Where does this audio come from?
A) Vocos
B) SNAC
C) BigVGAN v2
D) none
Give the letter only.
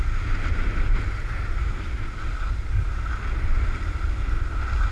D